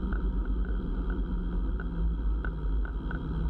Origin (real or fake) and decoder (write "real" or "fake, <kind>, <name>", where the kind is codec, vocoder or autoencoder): real